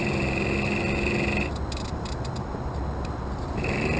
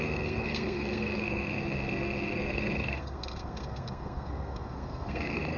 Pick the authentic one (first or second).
first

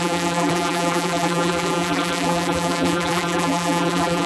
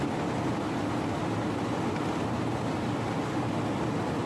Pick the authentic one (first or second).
second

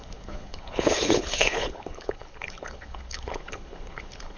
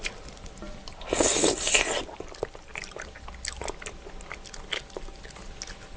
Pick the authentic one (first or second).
second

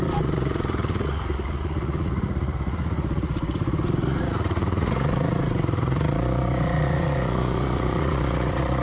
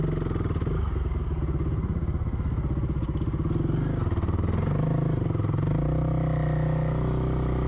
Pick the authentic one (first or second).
second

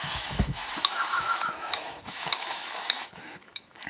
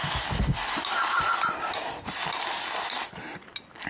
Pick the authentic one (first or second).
second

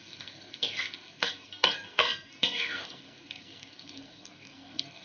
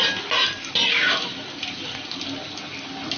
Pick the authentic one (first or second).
second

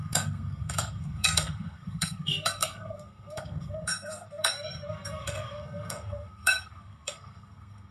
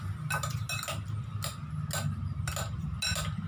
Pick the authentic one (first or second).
second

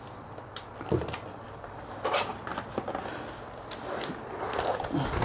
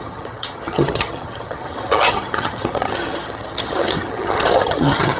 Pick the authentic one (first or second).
first